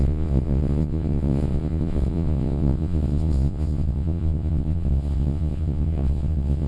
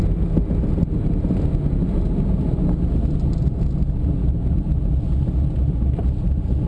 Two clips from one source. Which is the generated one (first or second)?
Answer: first